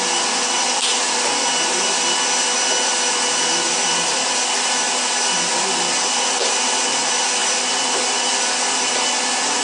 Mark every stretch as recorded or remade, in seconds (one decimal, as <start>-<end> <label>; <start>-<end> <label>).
0.0-9.6 recorded